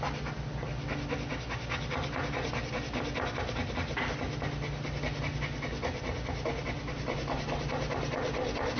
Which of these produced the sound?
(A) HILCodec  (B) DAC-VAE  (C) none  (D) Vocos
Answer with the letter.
C